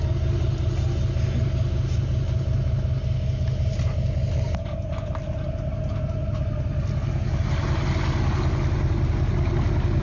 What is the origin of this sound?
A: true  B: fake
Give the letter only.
A